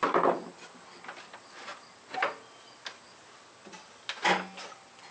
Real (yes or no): yes